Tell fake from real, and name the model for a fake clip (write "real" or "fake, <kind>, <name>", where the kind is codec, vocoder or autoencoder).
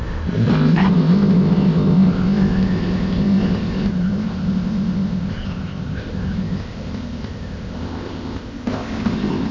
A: fake, codec, ZipCodec